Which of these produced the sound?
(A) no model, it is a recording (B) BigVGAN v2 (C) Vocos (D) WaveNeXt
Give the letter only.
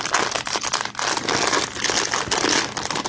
A